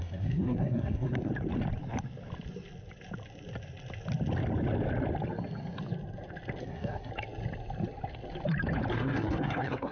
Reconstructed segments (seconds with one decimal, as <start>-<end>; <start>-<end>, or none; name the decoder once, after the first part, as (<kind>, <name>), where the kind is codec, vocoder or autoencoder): 0.0-1.3 (codec, SNAC); 6.6-7.1; 8.9-9.9